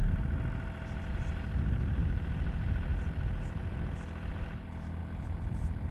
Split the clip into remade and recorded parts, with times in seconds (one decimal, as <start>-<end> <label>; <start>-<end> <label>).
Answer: 0.0-5.9 recorded